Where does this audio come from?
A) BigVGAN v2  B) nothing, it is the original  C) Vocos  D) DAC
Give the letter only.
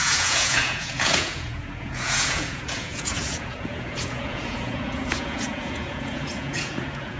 C